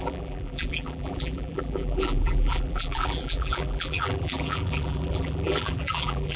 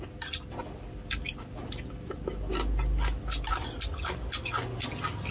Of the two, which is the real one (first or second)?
second